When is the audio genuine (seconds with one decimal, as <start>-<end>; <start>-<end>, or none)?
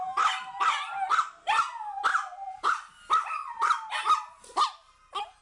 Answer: 0.0-2.1